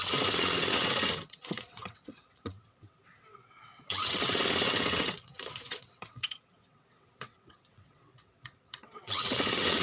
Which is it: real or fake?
fake